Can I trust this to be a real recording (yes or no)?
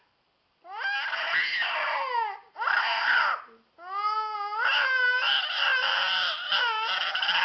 yes